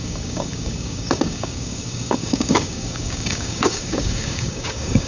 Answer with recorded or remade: remade